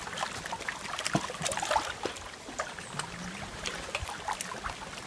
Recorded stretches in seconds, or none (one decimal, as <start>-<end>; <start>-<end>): 0.0-3.2; 4.0-5.1